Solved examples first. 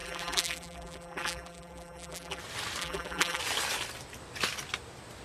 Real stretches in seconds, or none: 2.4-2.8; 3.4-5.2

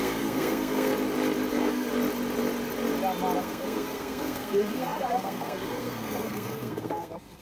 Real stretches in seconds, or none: 0.9-1.5; 1.9-3.4

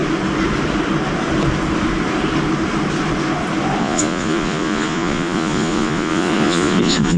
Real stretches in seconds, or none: 0.0-3.8

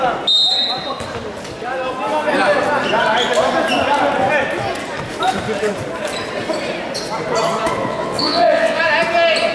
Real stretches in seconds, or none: 0.0-7.9; 8.8-9.5